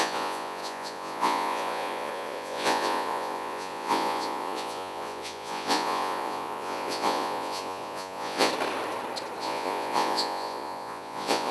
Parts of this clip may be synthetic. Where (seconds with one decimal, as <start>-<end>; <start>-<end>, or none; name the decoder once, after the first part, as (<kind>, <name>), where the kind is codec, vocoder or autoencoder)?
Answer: 0.0-8.5 (vocoder, Vocos); 9.4-11.5